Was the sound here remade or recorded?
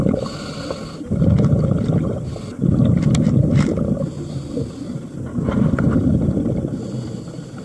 recorded